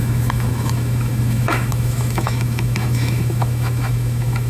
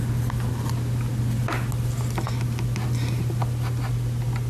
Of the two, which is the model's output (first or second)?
first